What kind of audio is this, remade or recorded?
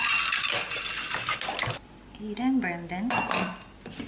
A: recorded